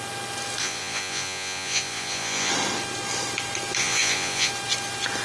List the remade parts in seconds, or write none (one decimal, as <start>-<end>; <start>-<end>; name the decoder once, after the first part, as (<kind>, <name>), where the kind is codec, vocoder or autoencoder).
0.6-2.5 (vocoder, Vocos); 3.8-4.5